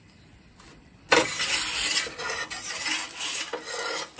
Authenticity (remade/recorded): recorded